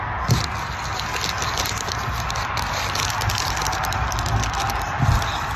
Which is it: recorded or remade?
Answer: recorded